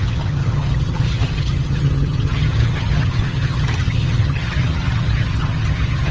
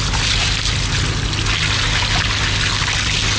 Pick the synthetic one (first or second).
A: first